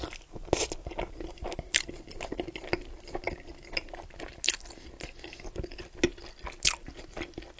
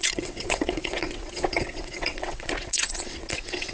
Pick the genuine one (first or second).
first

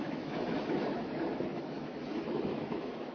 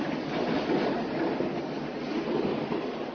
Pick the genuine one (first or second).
second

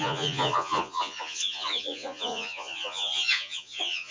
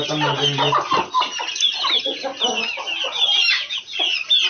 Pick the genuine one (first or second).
second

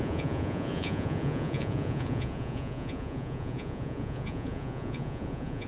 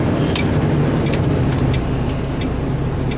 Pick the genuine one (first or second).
second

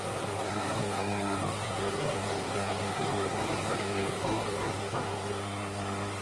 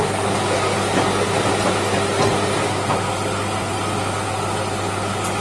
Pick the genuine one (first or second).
second